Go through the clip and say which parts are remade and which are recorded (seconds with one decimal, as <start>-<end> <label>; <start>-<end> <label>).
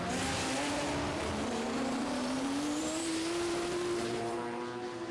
0.0-1.1 recorded; 1.1-4.2 remade; 4.2-5.1 recorded